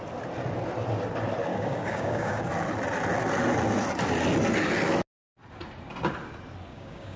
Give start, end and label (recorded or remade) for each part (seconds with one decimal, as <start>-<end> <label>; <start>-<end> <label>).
0.0-1.5 recorded; 1.5-2.5 remade; 2.5-6.7 recorded; 6.7-7.2 remade